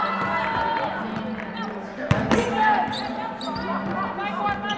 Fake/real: real